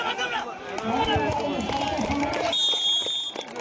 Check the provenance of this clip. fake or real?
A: real